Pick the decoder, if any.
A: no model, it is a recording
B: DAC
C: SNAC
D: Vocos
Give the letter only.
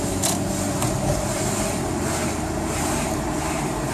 A